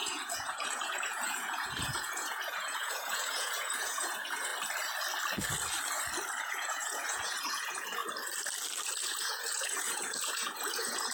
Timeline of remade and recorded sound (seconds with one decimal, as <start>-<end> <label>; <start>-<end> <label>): 0.0-4.5 remade; 4.5-6.4 recorded; 6.4-8.0 remade; 8.0-9.0 recorded; 9.0-11.1 remade